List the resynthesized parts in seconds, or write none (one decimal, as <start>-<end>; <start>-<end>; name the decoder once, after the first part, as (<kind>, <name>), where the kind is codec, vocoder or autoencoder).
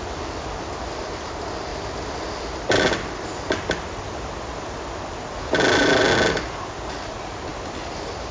none